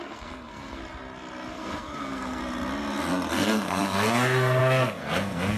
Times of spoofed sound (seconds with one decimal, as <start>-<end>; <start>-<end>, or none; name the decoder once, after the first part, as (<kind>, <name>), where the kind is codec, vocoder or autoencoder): 0.0-0.8 (codec, SNAC); 1.5-2.4; 3.3-5.6